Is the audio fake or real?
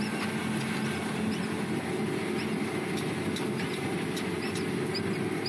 real